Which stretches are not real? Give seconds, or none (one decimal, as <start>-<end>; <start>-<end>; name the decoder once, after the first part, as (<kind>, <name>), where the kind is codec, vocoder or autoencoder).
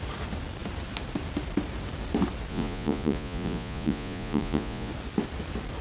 2.5-4.9 (vocoder, Vocos)